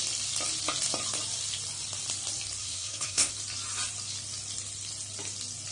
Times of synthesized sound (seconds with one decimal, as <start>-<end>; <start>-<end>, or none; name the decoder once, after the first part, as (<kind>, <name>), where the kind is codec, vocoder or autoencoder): 2.6-3.3 (codec, SNAC)

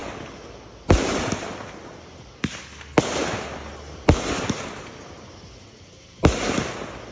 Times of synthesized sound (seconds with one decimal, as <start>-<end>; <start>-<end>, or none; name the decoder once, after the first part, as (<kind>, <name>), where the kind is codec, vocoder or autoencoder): none

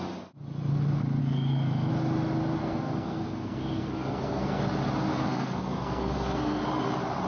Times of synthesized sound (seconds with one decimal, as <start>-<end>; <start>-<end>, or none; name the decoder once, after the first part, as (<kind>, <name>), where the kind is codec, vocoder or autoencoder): 1.2-1.9 (codec, SNAC); 2.6-4.6; 5.1-6.6

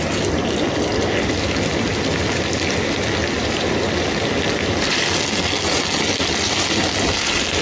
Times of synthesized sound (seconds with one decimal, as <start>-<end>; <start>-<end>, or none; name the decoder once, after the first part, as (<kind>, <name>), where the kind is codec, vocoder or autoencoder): none

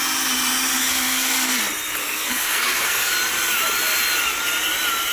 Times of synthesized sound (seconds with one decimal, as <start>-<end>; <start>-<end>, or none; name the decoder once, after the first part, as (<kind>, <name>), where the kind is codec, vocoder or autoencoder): 0.9-1.6 (codec, SNAC); 2.0-3.1

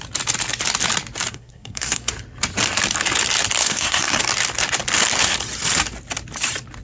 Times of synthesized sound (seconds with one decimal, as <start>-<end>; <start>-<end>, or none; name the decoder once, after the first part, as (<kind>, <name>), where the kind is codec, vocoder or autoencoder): 1.3-2.1 (codec, SNAC); 3.6-4.2

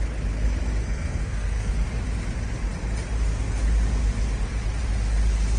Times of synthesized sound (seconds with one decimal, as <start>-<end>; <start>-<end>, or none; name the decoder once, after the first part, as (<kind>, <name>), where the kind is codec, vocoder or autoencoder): 0.8-1.7 (codec, SNAC)

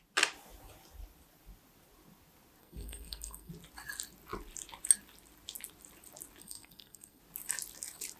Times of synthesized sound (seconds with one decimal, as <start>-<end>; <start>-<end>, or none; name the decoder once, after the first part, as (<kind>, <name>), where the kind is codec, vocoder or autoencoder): 2.6-3.5 (codec, SNAC); 6.4-7.2